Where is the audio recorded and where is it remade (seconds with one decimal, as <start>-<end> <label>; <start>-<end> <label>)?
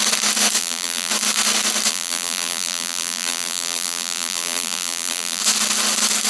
0.0-0.6 recorded; 0.6-1.1 remade; 1.1-1.9 recorded; 1.9-5.4 remade; 5.4-6.3 recorded